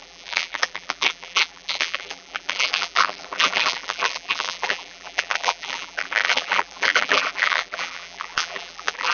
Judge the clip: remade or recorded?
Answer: remade